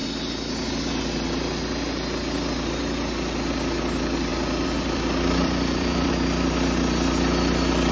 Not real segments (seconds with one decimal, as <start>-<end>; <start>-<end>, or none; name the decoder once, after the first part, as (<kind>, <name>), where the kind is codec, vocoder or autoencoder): 4.3-6.1 (vocoder, BigVGAN v2)